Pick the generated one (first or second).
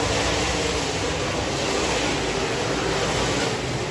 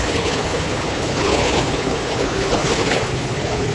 second